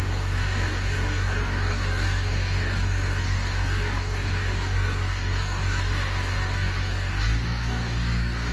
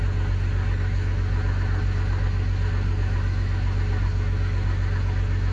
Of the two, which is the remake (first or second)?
first